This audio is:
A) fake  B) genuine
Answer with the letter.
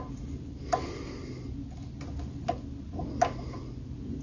B